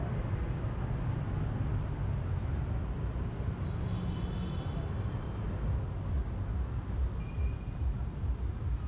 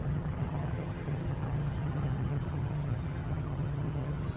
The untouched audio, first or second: first